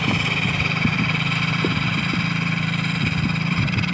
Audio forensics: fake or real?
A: fake